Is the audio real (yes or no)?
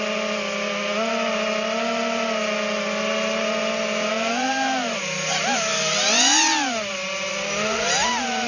yes